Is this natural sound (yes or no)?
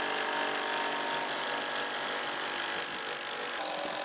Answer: yes